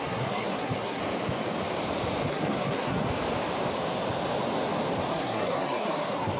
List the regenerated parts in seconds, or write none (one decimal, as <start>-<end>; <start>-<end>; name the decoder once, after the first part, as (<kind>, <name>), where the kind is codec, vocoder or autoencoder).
0.0-1.0 (codec, SNAC); 2.3-3.0; 5.1-6.4